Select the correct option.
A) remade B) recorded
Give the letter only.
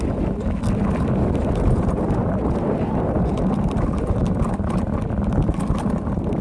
B